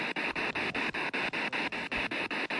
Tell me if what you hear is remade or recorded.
recorded